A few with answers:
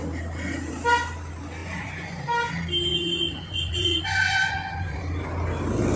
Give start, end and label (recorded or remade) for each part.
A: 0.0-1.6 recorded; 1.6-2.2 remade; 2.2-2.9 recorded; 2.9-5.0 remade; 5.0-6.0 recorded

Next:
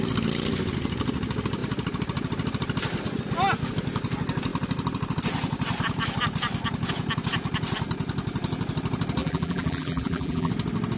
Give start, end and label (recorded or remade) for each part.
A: 0.0-9.2 recorded; 9.2-10.5 remade; 10.5-11.0 recorded